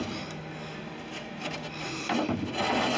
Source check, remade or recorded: recorded